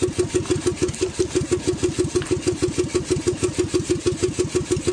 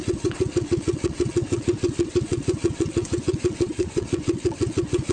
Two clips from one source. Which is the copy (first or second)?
second